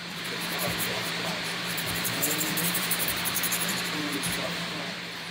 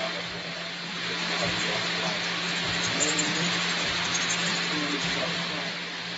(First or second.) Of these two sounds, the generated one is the first